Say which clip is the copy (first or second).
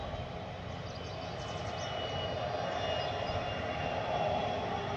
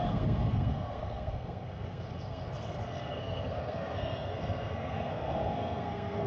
second